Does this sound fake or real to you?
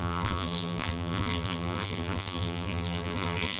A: fake